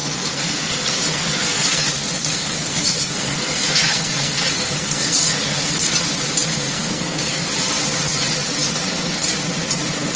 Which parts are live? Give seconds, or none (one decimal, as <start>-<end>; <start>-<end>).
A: 1.8-2.2; 5.9-6.5; 7.3-10.2